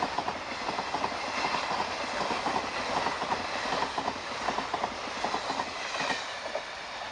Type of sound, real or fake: real